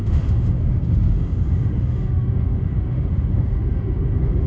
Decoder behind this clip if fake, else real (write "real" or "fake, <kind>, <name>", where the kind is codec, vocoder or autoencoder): fake, autoencoder, DAC-VAE